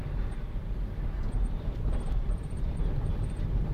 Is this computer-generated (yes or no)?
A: yes